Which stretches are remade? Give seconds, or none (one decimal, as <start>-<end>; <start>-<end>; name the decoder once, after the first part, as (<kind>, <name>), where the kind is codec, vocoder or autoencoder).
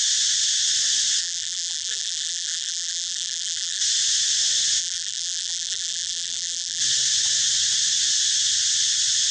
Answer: 1.2-3.8 (vocoder, BigVGAN v2); 4.8-6.8